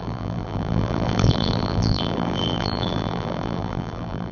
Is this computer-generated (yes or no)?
yes